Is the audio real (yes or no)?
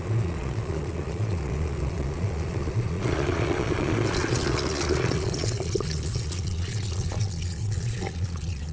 no